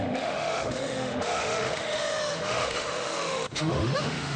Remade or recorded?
remade